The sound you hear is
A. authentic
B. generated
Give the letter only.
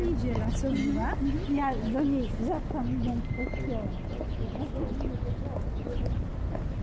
A